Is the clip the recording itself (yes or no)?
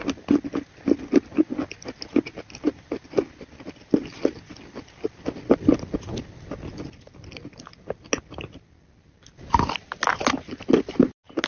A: yes